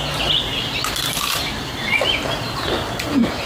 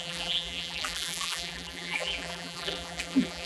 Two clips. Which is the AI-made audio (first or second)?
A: second